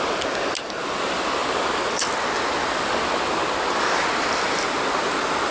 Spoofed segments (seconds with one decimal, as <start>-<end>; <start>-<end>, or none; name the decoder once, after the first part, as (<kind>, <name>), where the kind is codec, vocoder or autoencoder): none